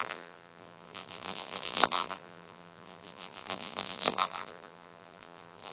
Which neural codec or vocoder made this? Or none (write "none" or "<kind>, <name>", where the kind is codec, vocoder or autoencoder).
vocoder, BigVGAN v2